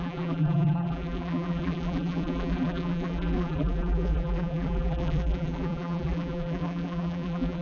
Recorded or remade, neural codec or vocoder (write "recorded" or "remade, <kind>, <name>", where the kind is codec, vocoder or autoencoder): remade, vocoder, BigVGAN v2